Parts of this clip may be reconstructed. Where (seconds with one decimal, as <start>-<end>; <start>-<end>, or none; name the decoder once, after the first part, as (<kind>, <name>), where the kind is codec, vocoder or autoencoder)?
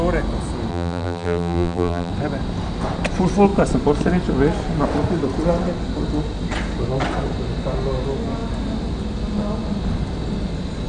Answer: 0.7-2.1 (vocoder, BigVGAN v2)